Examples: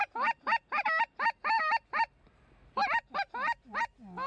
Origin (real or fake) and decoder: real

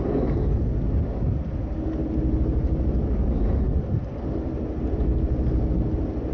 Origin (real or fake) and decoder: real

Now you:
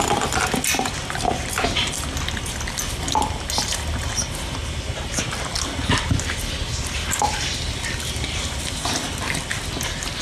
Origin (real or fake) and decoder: real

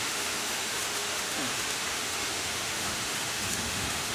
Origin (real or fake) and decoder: fake, autoencoder, DAC-VAE